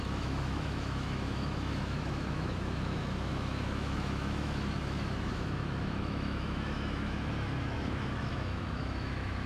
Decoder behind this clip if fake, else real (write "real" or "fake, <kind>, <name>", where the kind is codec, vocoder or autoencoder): fake, autoencoder, DAC-VAE